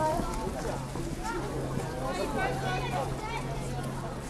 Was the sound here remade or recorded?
recorded